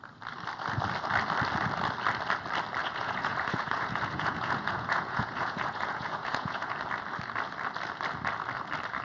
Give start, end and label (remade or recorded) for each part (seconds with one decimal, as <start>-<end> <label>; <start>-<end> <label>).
0.0-2.8 recorded; 2.8-6.7 remade; 6.7-9.0 recorded